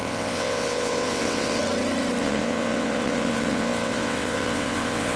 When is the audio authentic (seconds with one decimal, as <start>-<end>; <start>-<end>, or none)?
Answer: 1.6-2.2